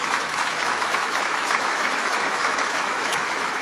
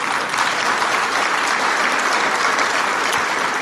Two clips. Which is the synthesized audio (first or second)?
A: first